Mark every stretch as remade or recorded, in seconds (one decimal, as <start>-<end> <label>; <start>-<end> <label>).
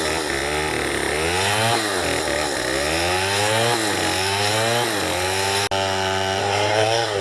0.0-6.4 recorded; 6.4-7.2 remade